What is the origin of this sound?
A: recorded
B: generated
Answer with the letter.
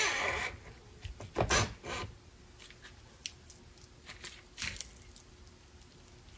A